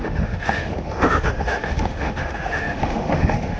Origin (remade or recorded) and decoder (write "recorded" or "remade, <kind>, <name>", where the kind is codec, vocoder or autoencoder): remade, autoencoder, DAC-VAE